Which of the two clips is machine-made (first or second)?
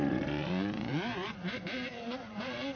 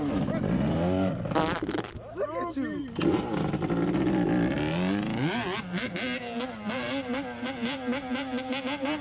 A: first